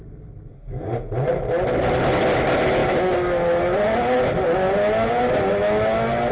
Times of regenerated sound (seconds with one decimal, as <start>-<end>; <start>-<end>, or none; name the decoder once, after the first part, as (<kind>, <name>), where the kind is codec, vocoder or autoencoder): none